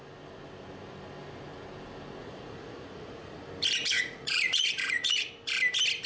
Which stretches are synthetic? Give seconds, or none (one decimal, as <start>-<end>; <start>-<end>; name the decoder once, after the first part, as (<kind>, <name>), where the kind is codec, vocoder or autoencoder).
2.2-3.4 (vocoder, Vocos); 3.8-5.3